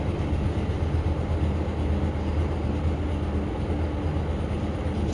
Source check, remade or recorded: recorded